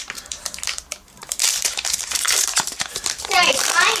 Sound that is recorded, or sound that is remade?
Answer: remade